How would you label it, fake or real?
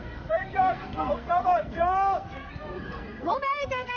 fake